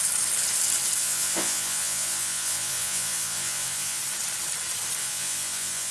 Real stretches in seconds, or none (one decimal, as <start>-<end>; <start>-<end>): 0.0-1.0; 4.0-5.0